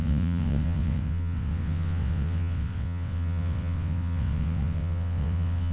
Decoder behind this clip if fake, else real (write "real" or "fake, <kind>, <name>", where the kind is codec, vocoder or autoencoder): fake, vocoder, WaveNeXt